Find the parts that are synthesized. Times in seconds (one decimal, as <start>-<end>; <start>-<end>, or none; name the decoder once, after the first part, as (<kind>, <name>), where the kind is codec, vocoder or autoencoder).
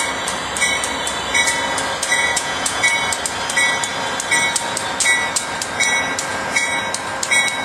2.1-2.8 (vocoder, Vocos); 6.3-6.8